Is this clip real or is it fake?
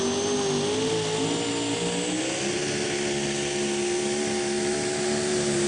real